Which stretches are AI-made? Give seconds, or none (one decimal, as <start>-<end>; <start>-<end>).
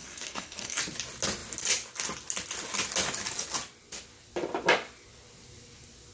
0.0-0.8